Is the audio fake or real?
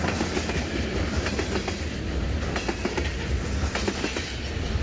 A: real